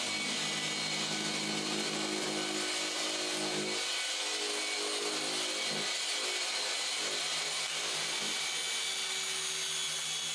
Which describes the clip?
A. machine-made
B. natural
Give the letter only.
B